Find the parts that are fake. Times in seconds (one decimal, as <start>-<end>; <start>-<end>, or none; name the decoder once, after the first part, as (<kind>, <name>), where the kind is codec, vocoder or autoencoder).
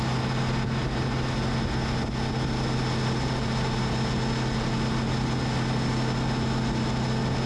none